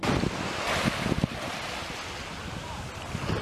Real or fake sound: real